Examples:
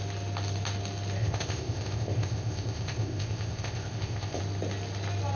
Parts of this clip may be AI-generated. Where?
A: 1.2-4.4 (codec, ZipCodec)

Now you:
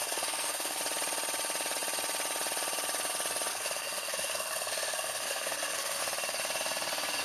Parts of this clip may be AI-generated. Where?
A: 0.0-0.8 (codec, SNAC); 3.5-6.0

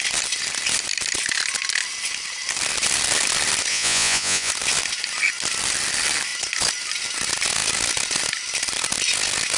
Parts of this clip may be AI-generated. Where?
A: 3.7-4.5 (vocoder, Vocos)

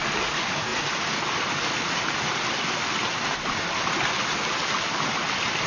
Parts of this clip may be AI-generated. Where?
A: none

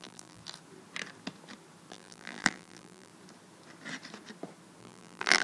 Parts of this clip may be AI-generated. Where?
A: 0.0-0.4 (vocoder, BigVGAN v2); 1.9-3.1; 4.8-5.4

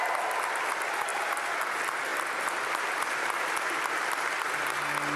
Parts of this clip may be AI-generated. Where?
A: none

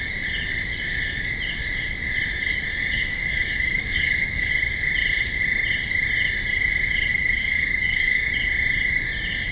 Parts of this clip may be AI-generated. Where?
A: 2.7-4.5 (codec, DAC); 7.1-8.3

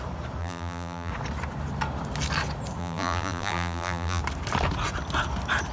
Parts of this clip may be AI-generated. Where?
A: 0.4-1.1 (vocoder, BigVGAN v2); 2.8-4.2